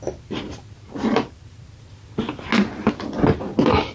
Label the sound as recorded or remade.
recorded